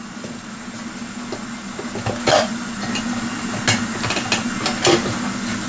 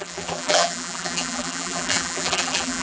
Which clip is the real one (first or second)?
first